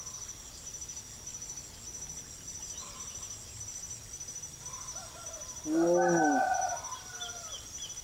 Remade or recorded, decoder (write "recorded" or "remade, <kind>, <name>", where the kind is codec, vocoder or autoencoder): recorded